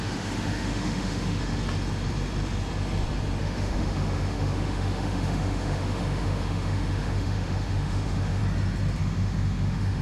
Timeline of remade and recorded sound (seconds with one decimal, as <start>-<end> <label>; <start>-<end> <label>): 0.0-1.5 remade; 1.5-3.4 recorded; 3.4-8.4 remade; 8.4-9.0 recorded; 9.0-10.0 remade